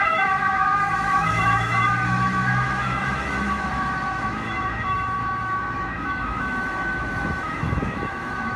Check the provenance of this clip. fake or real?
fake